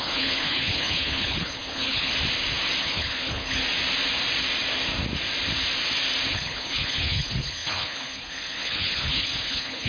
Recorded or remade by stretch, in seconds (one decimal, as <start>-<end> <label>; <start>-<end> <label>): 0.0-2.1 remade; 2.1-2.8 recorded; 2.8-3.6 remade; 3.6-6.3 recorded; 6.3-9.9 remade